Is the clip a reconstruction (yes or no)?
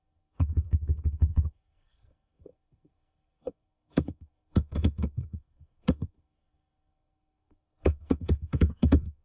yes